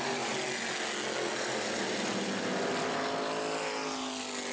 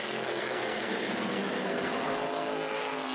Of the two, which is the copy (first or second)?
second